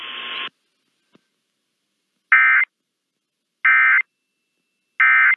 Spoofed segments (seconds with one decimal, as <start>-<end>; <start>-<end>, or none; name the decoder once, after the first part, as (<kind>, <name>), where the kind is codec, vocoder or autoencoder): none